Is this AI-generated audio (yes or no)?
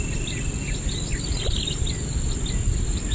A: no